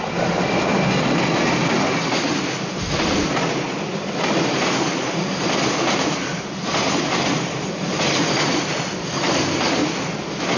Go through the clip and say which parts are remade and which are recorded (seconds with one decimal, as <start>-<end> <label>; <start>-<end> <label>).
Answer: 0.0-10.6 recorded